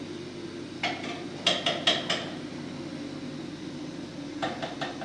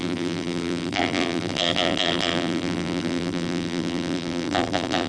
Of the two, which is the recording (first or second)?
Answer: first